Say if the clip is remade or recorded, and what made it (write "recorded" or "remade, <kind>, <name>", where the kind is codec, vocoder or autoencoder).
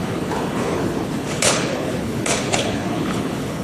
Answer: remade, codec, HILCodec